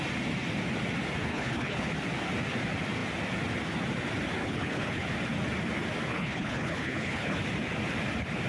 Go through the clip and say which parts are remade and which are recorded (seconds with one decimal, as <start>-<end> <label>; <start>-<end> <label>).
0.0-1.3 recorded; 1.3-1.9 remade; 1.9-4.4 recorded; 4.4-5.0 remade; 5.0-6.1 recorded; 6.1-7.4 remade; 7.4-8.5 recorded